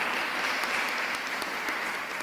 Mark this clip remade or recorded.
recorded